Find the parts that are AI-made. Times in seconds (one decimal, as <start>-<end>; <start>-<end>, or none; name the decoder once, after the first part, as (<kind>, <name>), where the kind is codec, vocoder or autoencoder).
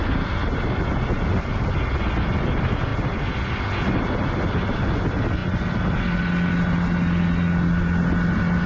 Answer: none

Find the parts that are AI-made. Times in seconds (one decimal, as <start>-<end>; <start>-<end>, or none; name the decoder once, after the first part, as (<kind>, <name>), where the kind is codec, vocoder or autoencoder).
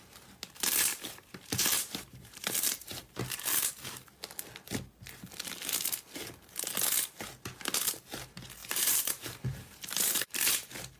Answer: 0.9-3.7 (vocoder, BigVGAN v2); 8.6-10.5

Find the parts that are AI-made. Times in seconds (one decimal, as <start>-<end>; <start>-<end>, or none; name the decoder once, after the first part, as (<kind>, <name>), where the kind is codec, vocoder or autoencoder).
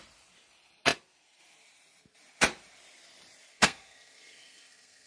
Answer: 3.5-5.1 (codec, SNAC)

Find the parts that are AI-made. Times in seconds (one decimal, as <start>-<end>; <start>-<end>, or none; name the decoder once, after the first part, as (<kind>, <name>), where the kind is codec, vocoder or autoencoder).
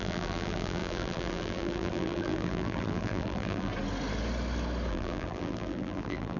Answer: 0.0-3.7 (vocoder, BigVGAN v2); 4.9-6.4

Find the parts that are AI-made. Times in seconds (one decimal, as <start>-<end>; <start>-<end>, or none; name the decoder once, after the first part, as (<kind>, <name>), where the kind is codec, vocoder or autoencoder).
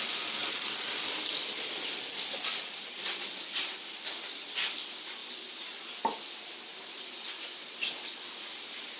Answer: none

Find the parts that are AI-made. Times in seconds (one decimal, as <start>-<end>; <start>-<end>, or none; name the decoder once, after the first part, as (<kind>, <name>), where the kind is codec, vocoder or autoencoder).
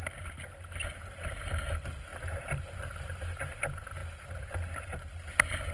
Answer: none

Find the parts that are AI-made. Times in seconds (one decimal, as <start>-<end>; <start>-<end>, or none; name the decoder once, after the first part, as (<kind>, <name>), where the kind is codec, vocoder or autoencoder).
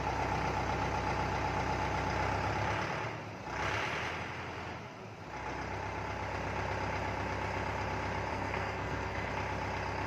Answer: 8.3-9.3 (codec, SNAC)